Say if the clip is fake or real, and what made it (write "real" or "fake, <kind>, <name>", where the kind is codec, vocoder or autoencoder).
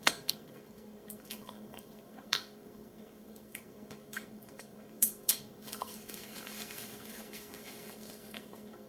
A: fake, codec, SNAC